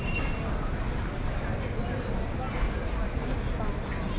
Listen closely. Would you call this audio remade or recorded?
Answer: recorded